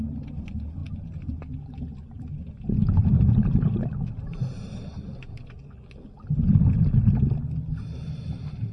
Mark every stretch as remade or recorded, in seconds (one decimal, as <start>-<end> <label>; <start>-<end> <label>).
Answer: 0.0-8.7 recorded